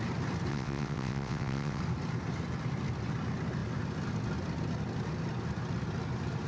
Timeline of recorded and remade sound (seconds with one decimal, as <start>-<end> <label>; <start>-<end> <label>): 0.0-0.5 recorded; 0.5-1.8 remade; 1.8-6.5 recorded